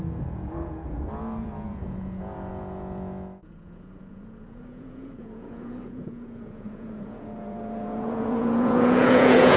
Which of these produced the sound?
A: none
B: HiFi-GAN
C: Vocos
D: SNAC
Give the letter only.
C